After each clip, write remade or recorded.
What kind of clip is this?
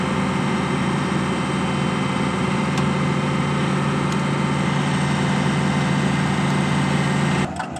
recorded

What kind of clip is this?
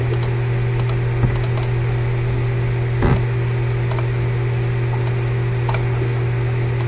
recorded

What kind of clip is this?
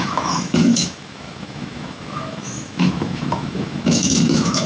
remade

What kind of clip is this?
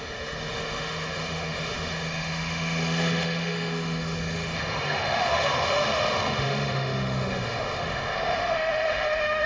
remade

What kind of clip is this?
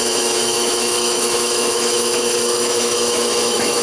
remade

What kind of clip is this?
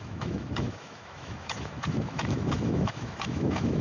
remade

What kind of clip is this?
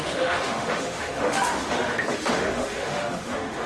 remade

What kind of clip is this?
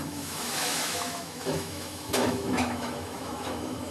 remade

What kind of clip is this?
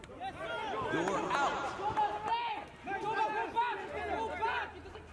recorded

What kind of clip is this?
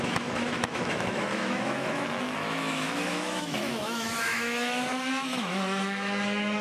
remade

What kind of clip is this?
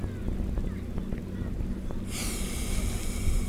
recorded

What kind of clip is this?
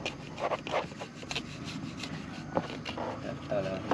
recorded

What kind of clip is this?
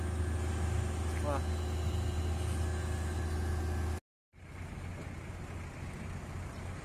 recorded